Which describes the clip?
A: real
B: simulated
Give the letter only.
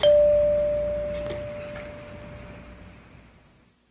A